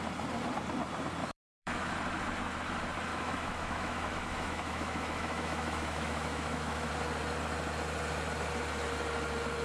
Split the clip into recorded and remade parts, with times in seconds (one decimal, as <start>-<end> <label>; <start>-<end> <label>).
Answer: 0.0-1.2 recorded; 1.2-1.9 remade; 1.9-3.1 recorded; 3.1-6.9 remade; 6.9-9.6 recorded